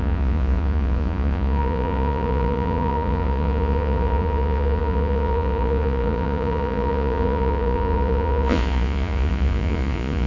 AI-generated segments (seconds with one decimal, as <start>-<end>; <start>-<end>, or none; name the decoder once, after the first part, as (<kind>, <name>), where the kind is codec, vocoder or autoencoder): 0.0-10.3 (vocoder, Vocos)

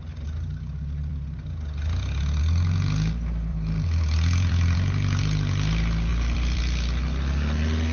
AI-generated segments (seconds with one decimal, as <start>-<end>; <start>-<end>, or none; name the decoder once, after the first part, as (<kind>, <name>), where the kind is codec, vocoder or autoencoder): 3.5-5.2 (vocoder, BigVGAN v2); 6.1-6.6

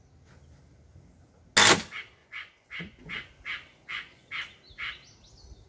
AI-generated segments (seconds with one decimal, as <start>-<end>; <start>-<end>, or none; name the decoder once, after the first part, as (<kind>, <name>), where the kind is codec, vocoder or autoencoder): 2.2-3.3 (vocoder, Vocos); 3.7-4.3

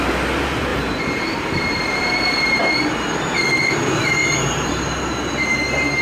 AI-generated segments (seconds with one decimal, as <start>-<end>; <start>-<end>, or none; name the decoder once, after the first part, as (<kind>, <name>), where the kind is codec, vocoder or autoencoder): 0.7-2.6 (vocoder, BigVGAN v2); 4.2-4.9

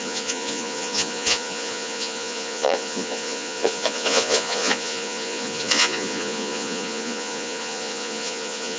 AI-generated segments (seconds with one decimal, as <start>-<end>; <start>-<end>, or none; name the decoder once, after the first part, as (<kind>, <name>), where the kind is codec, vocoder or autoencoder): 0.0-8.8 (vocoder, Vocos)

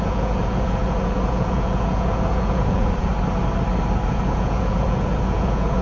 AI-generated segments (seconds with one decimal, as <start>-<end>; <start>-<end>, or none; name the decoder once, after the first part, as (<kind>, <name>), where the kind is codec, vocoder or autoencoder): 0.0-3.1 (vocoder, Vocos); 4.1-5.8